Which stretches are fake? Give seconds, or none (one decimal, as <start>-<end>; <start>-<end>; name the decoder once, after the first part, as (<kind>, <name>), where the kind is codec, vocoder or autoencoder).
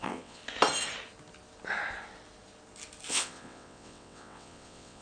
0.0-0.4 (vocoder, WaveNeXt); 3.1-5.0